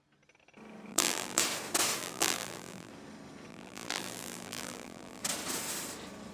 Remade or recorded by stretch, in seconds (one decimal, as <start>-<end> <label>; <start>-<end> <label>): 0.0-0.9 recorded; 0.9-1.4 remade; 1.4-2.0 recorded; 2.0-2.9 remade; 2.9-3.5 recorded; 3.5-5.2 remade; 5.2-6.3 recorded